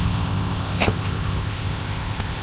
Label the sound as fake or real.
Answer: fake